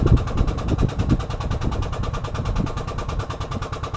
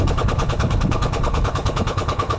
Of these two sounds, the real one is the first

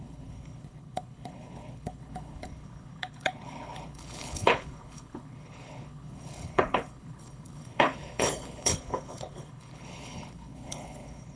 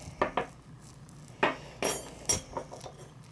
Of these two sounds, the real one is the second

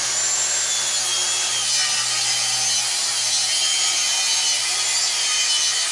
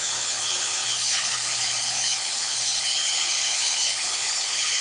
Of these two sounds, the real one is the first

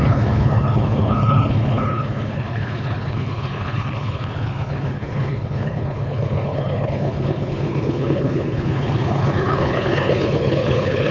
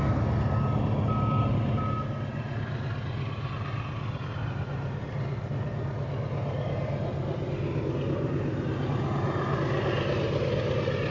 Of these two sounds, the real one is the second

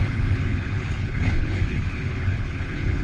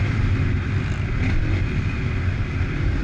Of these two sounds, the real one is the second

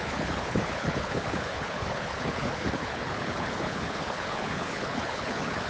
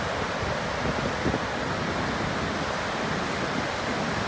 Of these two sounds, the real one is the second